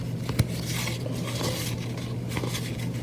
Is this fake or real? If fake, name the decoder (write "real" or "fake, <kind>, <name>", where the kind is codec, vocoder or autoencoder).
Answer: real